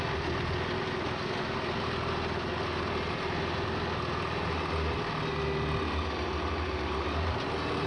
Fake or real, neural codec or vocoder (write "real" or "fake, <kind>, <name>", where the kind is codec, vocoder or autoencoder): real